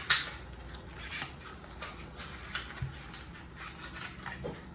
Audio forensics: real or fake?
real